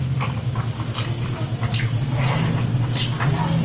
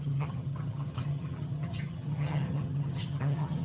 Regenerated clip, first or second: second